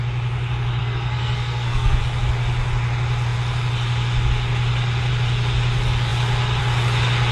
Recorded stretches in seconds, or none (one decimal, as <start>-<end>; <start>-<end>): 0.0-0.8; 2.0-7.3